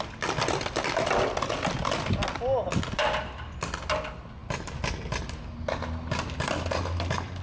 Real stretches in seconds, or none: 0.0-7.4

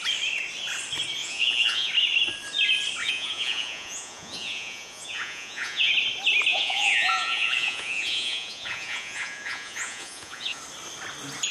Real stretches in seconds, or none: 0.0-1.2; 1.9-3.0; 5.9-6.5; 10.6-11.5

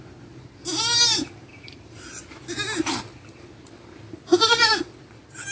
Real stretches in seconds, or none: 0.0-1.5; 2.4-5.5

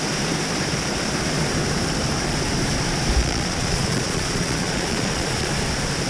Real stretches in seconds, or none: 0.0-3.2; 5.5-6.1

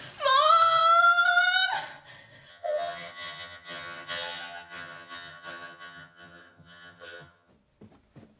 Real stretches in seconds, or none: 0.0-2.5; 7.5-8.4